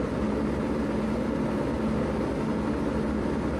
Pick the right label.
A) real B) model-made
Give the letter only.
A